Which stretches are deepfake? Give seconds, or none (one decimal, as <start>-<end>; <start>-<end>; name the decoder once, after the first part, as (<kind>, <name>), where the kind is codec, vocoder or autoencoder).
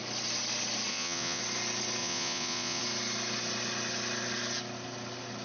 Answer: 0.9-1.4 (vocoder, Vocos); 2.0-2.8